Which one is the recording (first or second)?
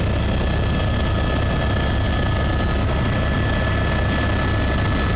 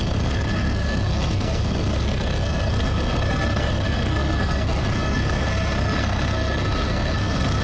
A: first